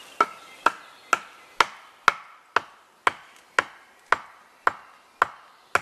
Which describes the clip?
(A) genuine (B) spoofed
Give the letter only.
A